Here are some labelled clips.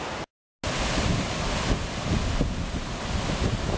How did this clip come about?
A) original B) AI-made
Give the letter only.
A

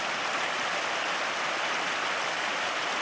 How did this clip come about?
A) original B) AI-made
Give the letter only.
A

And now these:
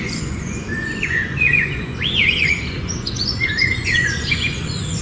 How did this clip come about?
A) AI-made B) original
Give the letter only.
A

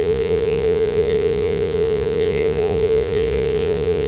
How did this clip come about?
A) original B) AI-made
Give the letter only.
B